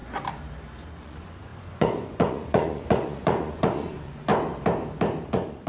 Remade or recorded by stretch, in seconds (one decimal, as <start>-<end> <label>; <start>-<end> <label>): 0.0-1.0 recorded; 1.0-4.3 remade; 4.3-5.3 recorded; 5.3-5.7 remade